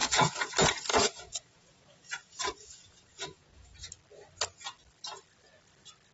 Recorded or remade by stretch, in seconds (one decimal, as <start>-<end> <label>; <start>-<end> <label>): 0.0-0.5 remade; 0.5-0.9 recorded; 0.9-3.6 remade; 3.6-6.1 recorded